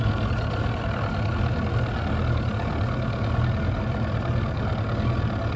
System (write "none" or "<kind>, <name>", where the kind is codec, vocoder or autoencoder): none